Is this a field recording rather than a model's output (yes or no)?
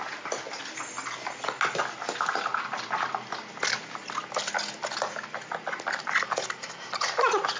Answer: yes